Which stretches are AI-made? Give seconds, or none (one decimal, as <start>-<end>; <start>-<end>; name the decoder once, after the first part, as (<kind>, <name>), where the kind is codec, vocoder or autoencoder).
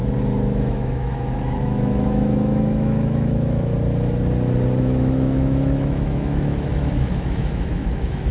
0.7-3.7 (autoencoder, DAC-VAE); 4.8-8.3